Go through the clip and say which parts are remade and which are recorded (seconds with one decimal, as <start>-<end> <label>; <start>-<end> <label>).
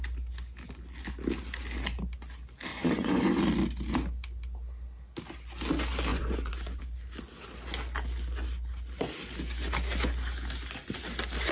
0.0-2.7 recorded; 2.7-3.4 remade; 3.4-6.1 recorded; 6.1-6.8 remade; 6.8-11.5 recorded